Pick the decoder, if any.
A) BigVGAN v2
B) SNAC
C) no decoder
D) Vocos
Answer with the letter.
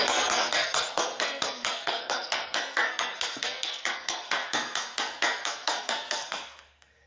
B